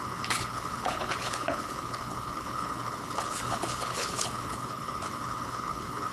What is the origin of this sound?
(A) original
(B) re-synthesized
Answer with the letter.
B